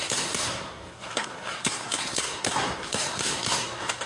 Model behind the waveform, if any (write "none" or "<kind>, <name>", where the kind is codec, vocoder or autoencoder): codec, SNAC